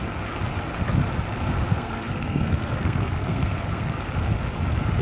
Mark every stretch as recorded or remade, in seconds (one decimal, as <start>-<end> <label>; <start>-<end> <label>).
0.0-1.7 recorded; 1.7-4.1 remade; 4.1-5.0 recorded